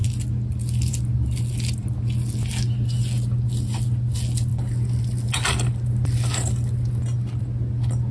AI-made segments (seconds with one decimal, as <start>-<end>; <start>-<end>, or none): none